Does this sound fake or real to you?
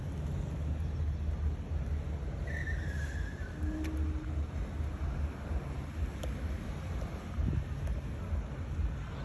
real